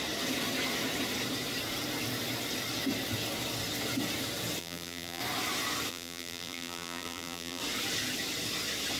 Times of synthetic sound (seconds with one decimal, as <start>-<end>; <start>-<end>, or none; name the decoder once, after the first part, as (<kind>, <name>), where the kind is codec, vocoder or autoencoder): 4.6-5.2 (vocoder, BigVGAN v2); 5.9-7.6